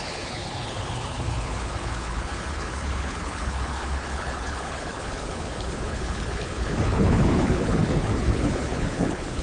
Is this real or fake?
fake